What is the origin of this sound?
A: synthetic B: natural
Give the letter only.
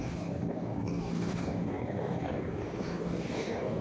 A